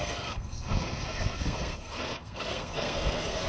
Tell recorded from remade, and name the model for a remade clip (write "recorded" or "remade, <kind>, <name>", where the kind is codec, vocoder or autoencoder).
remade, codec, SNAC